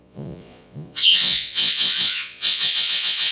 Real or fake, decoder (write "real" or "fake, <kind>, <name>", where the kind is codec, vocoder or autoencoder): fake, vocoder, Vocos